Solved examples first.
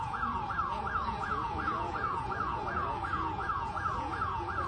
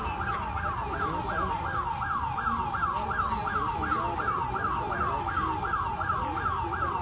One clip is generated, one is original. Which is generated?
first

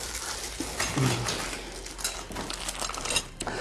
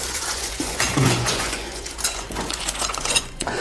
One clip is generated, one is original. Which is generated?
second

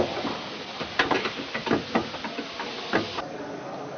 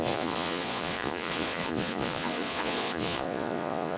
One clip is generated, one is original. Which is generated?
second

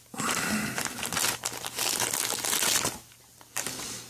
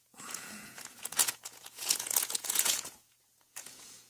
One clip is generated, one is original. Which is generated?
second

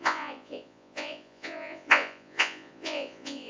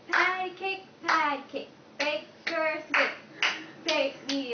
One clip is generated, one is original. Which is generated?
first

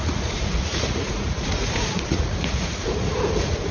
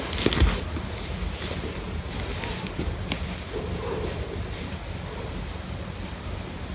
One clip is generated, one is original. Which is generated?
first